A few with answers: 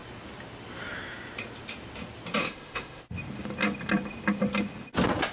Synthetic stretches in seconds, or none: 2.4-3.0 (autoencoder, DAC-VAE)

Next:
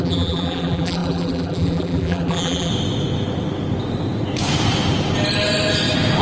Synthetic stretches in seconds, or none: 0.0-2.7 (vocoder, BigVGAN v2)

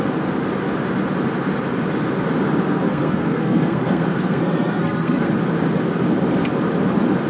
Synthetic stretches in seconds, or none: 2.6-5.3 (codec, SNAC)

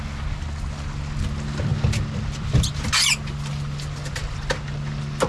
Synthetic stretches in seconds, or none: none

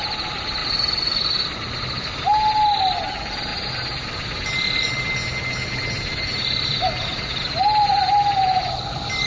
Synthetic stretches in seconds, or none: none

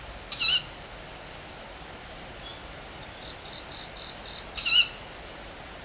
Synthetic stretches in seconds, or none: none

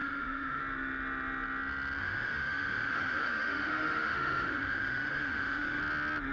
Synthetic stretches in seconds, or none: 0.0-0.6 (autoencoder, DAC-VAE); 2.0-5.8

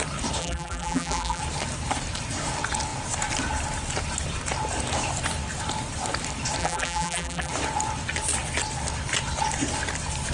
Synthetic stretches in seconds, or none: 0.4-1.4 (vocoder, BigVGAN v2); 6.6-7.5